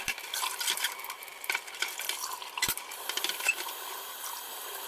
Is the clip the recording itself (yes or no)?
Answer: no